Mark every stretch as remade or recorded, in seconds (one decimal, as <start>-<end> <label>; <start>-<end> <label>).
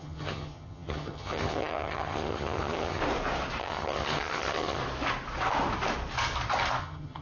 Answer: 0.0-3.0 remade; 3.0-3.6 recorded; 3.6-4.8 remade; 4.8-6.8 recorded; 6.8-7.2 remade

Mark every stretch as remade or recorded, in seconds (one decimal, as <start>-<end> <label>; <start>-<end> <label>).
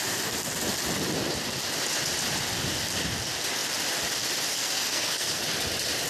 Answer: 0.0-4.5 recorded; 4.5-5.4 remade; 5.4-6.1 recorded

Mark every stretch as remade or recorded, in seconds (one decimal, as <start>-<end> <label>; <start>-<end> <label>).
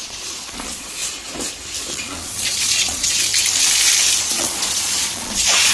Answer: 0.0-1.0 remade; 1.0-1.8 recorded; 1.8-3.2 remade; 3.2-4.3 recorded; 4.3-5.7 remade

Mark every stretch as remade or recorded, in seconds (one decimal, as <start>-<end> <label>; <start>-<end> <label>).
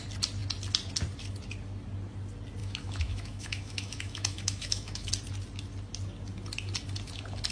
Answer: 0.0-2.6 recorded; 2.6-5.1 remade; 5.1-7.5 recorded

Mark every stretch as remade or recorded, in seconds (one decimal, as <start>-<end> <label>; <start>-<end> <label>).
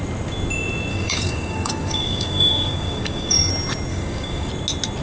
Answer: 0.0-0.9 recorded; 0.9-3.5 remade; 3.5-3.9 recorded; 3.9-4.5 remade; 4.5-5.0 recorded